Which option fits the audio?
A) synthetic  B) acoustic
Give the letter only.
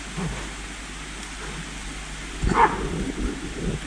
B